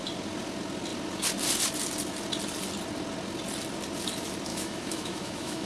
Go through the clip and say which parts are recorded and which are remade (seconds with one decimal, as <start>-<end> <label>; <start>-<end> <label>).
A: 0.0-4.5 recorded; 4.5-5.7 remade